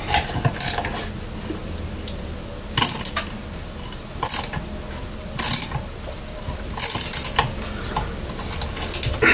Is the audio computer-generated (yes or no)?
no